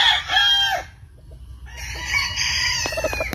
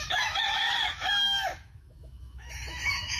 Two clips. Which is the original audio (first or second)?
first